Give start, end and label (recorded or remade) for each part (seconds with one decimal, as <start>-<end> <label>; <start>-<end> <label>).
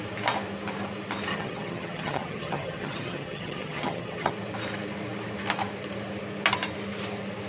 0.0-1.3 recorded; 1.3-4.3 remade; 4.3-7.5 recorded